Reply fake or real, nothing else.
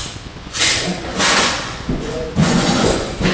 fake